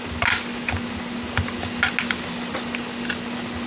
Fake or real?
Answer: real